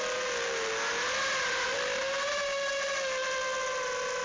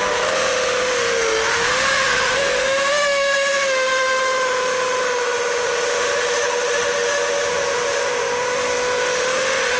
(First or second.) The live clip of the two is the first